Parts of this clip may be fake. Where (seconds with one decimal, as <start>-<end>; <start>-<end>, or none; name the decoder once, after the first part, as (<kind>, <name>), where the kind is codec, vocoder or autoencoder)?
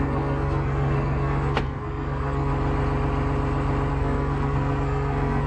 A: 0.0-2.5 (codec, SNAC); 3.9-5.5